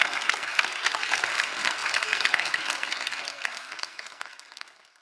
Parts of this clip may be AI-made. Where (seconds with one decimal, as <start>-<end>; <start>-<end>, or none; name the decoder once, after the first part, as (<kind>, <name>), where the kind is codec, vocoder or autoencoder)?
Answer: 0.0-5.0 (codec, SNAC)